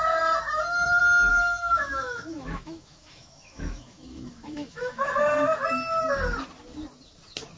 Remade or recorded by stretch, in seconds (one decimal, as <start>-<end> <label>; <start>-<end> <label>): 0.0-1.3 recorded; 1.3-5.1 remade; 5.1-7.6 recorded